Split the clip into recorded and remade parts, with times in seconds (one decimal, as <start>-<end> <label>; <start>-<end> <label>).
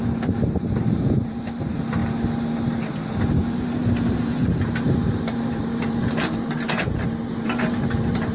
0.0-2.0 remade; 2.0-3.4 recorded; 3.4-8.3 remade